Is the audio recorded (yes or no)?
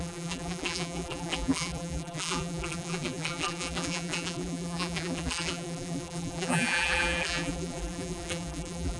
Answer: no